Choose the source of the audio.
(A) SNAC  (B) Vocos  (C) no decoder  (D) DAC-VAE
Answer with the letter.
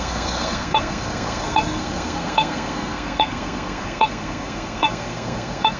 A